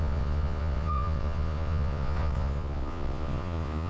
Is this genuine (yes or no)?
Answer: no